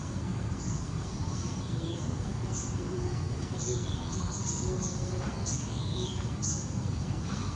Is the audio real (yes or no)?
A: no